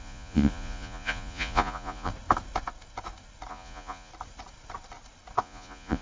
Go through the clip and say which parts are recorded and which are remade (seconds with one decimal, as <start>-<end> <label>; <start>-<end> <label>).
0.0-2.1 remade; 2.1-3.5 recorded; 3.5-4.1 remade; 4.1-5.4 recorded; 5.4-6.0 remade